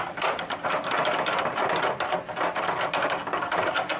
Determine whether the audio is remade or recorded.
recorded